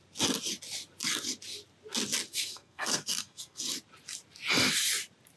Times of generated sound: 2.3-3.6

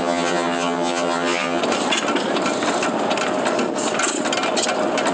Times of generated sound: 0.0-1.6

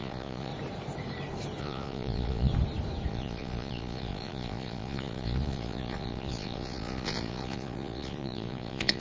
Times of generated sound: 0.0-0.5; 1.6-2.5; 3.1-9.0

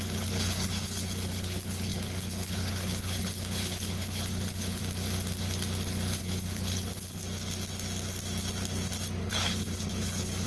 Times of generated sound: 0.0-4.8; 6.2-7.2; 9.2-10.5

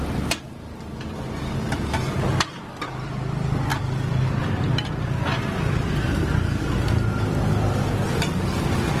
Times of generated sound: none

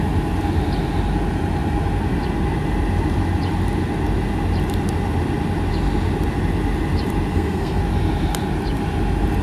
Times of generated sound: 7.3-7.8

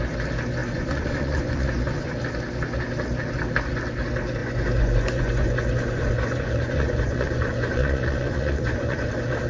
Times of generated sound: 0.6-2.1; 4.4-9.1

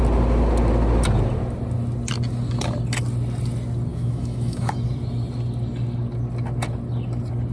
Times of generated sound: 3.9-4.7